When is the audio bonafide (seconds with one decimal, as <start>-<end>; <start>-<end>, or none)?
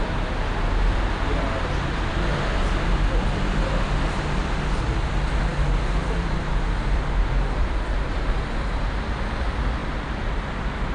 0.0-5.5; 9.0-9.8; 10.4-10.9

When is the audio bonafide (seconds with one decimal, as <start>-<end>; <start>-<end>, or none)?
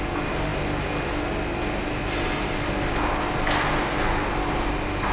0.0-5.1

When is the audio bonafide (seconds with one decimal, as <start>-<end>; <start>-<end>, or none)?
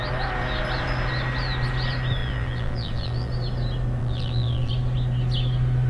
0.0-2.2; 3.3-4.0; 4.7-5.9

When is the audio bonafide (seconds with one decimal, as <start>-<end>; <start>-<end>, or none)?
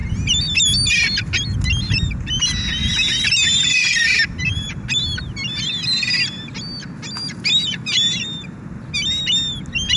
0.0-2.8; 4.7-10.0